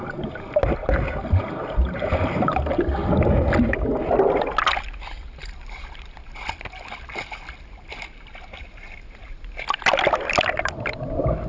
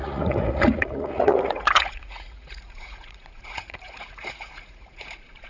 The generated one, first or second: second